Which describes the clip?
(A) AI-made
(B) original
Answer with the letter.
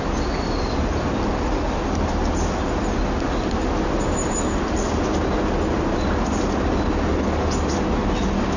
B